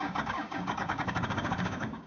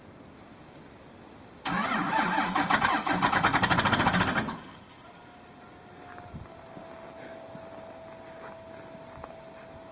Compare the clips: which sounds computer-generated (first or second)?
first